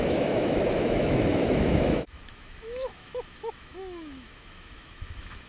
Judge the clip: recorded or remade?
remade